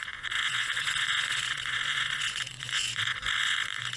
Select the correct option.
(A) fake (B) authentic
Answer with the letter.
A